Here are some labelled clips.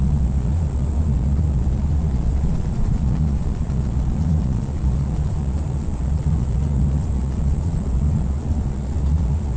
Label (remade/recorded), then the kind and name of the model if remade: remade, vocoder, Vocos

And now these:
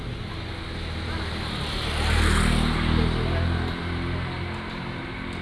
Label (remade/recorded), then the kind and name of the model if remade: recorded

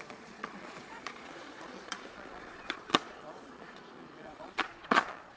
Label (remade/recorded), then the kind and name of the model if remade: remade, vocoder, Vocos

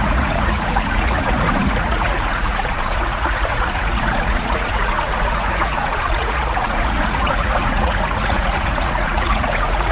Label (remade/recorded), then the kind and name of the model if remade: remade, vocoder, Vocos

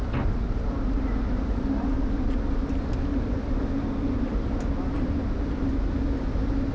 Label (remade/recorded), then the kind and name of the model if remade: recorded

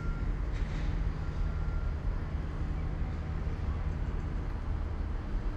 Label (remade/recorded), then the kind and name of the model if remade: recorded